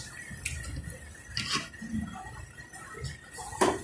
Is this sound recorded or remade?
recorded